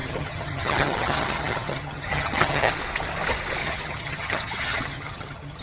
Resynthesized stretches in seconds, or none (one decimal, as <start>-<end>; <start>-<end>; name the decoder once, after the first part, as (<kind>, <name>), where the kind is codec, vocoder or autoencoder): 0.0-2.7 (vocoder, HiFi-GAN); 3.6-5.6